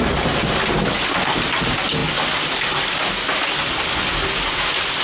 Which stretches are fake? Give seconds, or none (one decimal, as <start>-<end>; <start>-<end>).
none